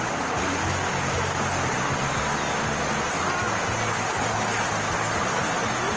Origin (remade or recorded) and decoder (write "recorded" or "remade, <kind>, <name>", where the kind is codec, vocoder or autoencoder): recorded